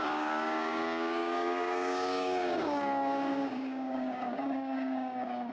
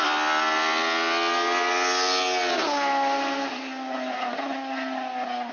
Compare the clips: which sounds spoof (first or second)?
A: first